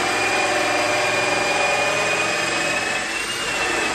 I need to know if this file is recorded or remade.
recorded